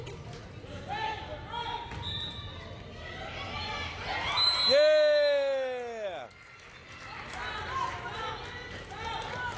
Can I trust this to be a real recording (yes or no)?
yes